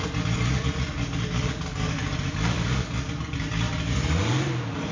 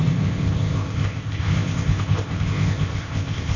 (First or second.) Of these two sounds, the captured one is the first